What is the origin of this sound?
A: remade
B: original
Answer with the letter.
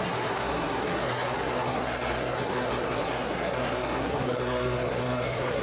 A